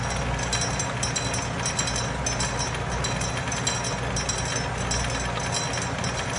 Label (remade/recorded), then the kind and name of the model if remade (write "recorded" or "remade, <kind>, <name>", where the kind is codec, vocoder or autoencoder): recorded